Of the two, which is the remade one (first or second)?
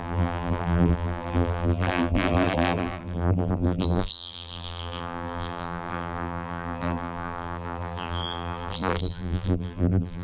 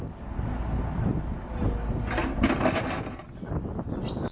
first